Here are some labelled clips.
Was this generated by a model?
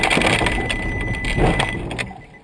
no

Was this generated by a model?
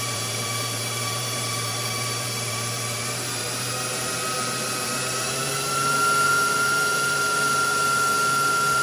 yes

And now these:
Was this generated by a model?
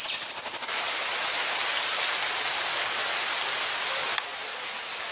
no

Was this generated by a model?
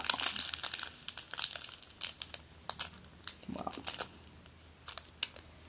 no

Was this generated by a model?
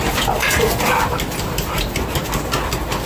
yes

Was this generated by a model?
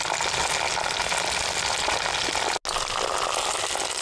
no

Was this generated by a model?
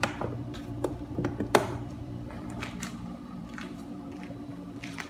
yes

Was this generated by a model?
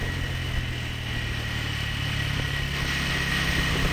no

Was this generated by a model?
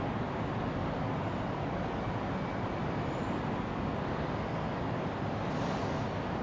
no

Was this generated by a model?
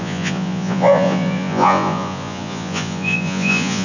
yes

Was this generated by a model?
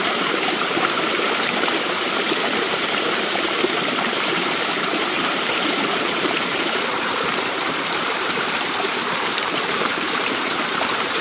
yes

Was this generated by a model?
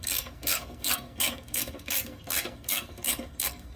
yes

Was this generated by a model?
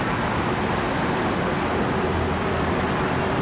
no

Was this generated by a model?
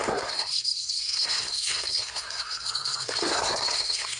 yes